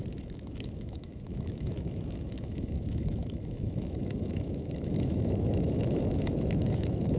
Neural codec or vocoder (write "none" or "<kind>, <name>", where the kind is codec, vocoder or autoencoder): autoencoder, DAC-VAE